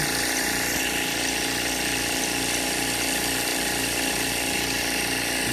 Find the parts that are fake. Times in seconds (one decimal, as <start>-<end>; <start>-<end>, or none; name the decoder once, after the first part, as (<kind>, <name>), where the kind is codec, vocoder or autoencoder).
3.5-4.3 (vocoder, BigVGAN v2)